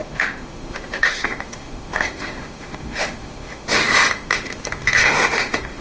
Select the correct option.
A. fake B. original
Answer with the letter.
A